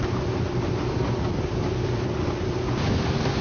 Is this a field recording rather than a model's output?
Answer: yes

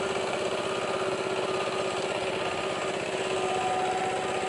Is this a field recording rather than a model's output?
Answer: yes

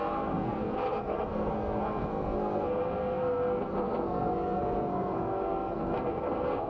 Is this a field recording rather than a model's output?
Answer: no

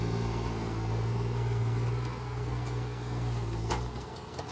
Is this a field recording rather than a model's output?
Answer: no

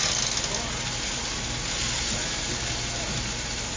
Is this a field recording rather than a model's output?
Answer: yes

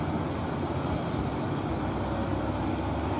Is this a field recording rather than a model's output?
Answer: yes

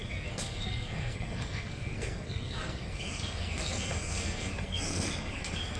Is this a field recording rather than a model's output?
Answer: no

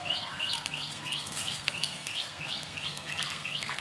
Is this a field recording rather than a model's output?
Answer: no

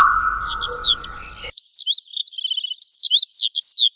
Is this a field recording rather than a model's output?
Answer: yes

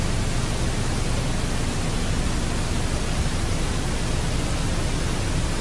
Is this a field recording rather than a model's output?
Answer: yes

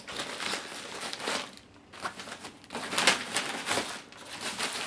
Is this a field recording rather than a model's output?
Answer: yes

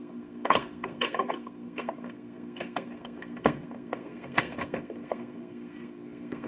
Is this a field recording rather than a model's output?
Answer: no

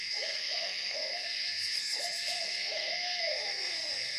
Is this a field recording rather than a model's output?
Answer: no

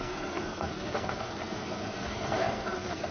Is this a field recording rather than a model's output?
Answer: no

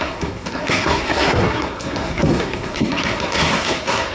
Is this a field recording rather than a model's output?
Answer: no